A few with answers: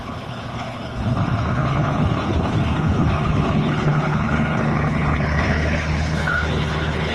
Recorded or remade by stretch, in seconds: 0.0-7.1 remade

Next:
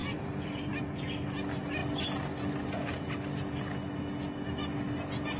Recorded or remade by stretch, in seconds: 0.0-0.8 remade; 0.8-5.4 recorded

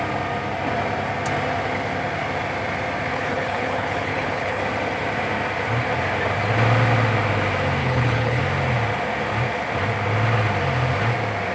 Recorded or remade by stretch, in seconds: 0.0-3.1 recorded; 3.1-4.6 remade; 4.6-7.8 recorded; 7.8-8.4 remade; 8.4-11.5 recorded

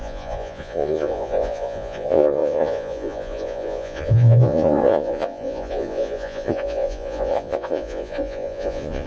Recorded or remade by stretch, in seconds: 0.0-9.1 remade

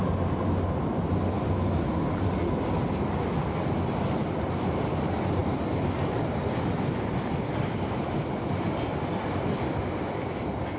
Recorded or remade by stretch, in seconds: 0.0-5.4 recorded; 5.4-9.8 remade; 9.8-10.8 recorded

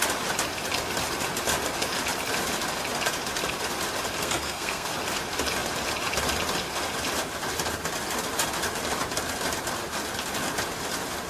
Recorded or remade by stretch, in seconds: 0.0-4.2 recorded; 4.2-4.9 remade; 4.9-11.3 recorded